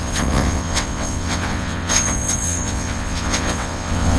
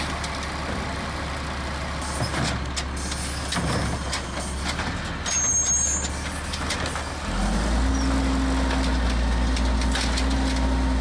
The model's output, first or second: first